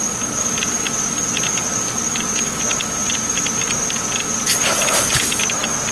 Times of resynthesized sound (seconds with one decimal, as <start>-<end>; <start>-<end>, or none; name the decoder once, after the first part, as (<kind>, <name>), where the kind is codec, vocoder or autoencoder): none